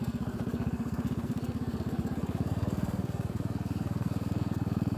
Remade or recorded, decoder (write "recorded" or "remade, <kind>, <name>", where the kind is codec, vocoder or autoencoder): remade, codec, SNAC